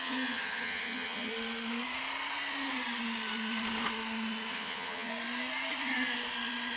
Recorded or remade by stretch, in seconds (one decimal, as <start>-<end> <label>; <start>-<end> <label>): 0.0-1.3 remade; 1.3-4.5 recorded; 4.5-5.1 remade; 5.1-6.8 recorded